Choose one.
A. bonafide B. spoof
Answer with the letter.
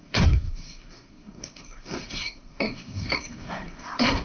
B